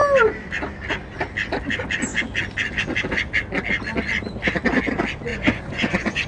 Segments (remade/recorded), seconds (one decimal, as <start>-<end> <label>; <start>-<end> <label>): 0.0-5.3 recorded; 5.3-6.3 remade